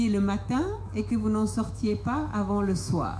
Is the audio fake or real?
fake